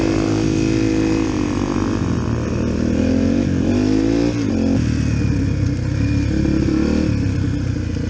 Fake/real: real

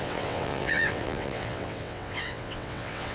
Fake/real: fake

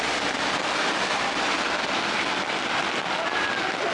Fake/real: real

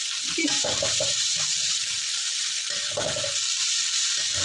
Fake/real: fake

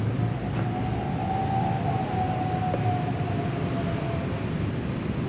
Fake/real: real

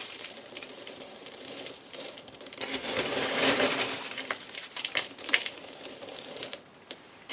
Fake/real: fake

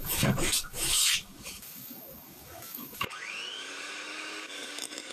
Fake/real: fake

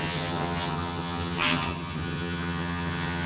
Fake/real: fake